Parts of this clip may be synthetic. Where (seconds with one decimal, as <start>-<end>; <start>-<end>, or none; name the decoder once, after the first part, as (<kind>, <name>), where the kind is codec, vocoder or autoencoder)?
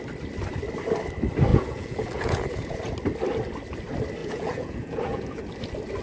1.5-2.8 (vocoder, Vocos); 4.2-5.4